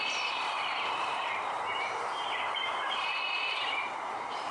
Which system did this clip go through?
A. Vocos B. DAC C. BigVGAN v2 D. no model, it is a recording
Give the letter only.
C